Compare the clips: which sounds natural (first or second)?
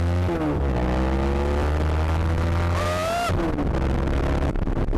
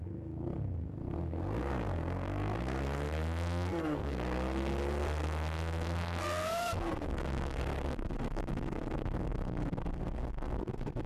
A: first